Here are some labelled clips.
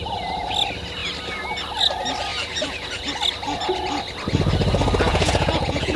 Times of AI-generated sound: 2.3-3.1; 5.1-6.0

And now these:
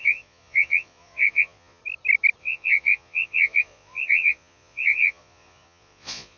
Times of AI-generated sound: 0.0-1.8; 2.4-6.4

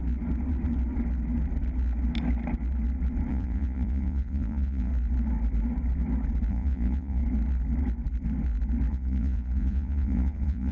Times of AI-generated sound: 3.3-4.9; 6.5-7.2; 8.9-10.7